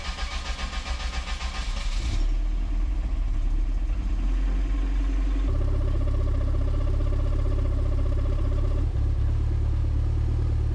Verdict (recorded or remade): recorded